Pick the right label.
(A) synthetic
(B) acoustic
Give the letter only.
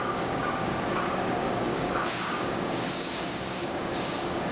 A